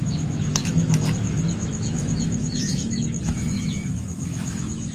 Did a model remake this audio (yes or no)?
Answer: yes